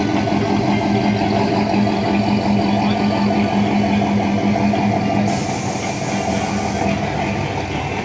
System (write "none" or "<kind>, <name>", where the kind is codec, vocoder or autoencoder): none